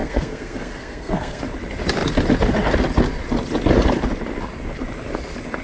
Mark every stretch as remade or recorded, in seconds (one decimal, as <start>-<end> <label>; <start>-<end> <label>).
0.0-1.4 remade; 1.4-5.6 recorded